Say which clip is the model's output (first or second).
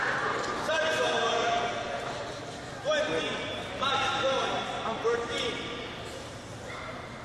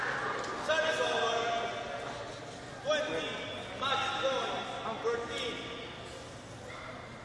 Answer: first